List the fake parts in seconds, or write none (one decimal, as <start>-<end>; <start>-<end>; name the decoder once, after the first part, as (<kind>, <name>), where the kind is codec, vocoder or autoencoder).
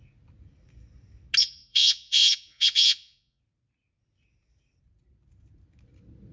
1.4-3.4 (vocoder, Vocos)